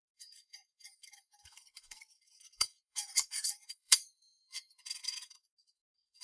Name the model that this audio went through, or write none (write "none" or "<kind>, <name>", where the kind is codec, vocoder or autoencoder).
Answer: codec, SNAC